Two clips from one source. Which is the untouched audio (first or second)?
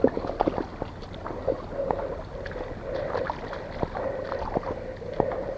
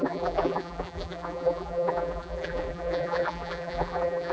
first